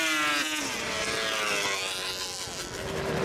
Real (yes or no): yes